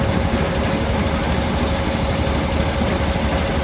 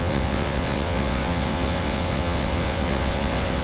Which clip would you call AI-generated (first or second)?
second